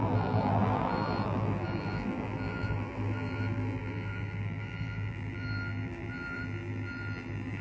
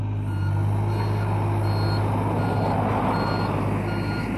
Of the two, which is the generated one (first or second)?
first